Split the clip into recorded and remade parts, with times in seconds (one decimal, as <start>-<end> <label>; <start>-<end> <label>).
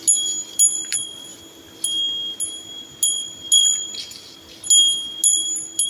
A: 0.0-5.9 recorded